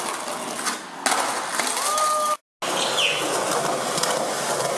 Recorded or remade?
recorded